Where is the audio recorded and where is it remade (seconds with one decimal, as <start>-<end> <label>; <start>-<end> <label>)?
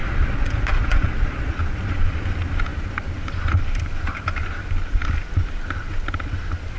0.0-1.6 remade; 1.6-6.8 recorded